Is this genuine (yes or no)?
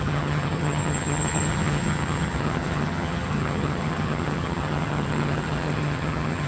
no